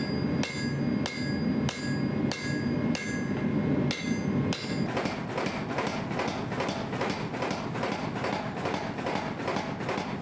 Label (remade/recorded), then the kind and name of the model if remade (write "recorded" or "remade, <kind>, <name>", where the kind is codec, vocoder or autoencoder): recorded